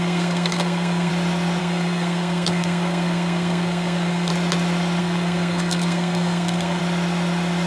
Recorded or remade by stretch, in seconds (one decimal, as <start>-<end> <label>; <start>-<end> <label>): 0.0-1.1 remade; 1.1-1.6 recorded; 1.6-4.3 remade; 4.3-5.0 recorded; 5.0-6.8 remade; 6.8-7.7 recorded